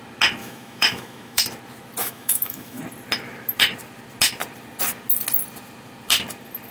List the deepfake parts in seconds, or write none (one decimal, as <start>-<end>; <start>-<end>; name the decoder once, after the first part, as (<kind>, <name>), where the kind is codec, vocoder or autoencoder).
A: 0.4-1.4 (autoencoder, DAC-VAE); 2.0-2.8